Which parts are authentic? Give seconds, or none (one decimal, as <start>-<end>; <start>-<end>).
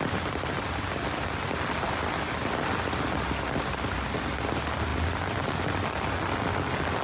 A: 0.0-7.0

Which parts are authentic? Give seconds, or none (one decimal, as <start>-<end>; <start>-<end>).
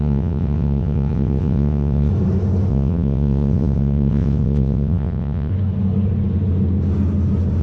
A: 2.1-2.7; 5.5-7.6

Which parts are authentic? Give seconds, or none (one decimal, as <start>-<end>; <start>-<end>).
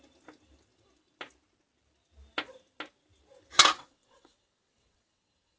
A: 0.0-3.7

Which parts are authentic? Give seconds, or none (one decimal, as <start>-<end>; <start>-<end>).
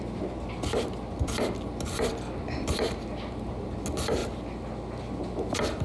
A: 0.0-5.8